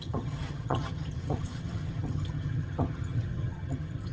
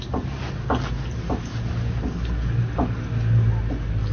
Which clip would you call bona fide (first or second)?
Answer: second